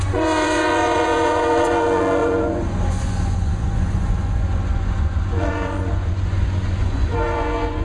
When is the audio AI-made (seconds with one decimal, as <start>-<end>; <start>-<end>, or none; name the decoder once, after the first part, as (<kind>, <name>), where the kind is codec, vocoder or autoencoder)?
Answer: 0.0-7.8 (vocoder, Vocos)